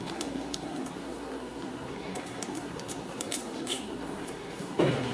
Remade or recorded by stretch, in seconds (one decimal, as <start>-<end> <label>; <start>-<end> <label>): 0.0-5.1 remade